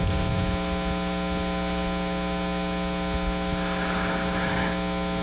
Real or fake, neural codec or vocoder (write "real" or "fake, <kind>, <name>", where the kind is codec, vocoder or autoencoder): real